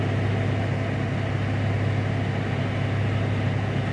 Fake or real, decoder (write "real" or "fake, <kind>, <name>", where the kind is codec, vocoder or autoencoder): real